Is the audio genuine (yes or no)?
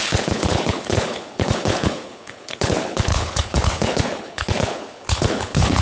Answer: no